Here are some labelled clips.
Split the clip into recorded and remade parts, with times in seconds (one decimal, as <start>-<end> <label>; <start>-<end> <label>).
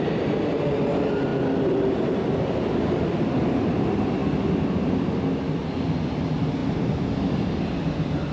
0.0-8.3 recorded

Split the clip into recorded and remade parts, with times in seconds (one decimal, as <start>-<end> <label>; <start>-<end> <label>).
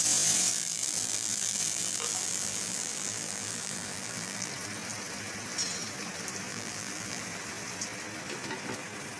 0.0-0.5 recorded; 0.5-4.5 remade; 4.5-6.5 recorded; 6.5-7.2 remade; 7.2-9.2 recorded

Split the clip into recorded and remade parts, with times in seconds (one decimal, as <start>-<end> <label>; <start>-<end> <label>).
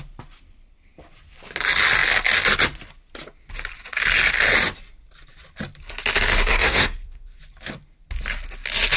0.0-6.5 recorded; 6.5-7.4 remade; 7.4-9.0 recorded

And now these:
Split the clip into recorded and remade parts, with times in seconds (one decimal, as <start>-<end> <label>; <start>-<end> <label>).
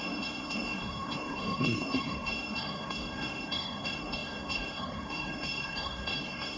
0.0-6.6 remade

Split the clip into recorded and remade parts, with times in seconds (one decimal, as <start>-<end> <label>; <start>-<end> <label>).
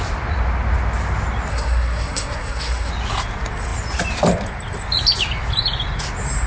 0.0-1.5 recorded; 1.5-2.9 remade; 2.9-6.5 recorded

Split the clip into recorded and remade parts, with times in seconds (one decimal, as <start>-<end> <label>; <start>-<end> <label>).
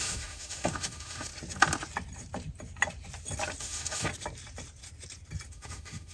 0.0-1.3 remade; 1.3-3.6 recorded; 3.6-4.1 remade; 4.1-5.5 recorded; 5.5-6.1 remade